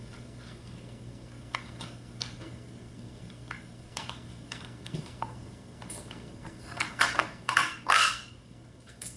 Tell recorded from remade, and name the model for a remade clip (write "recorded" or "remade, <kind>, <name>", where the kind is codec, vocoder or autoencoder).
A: remade, codec, SNAC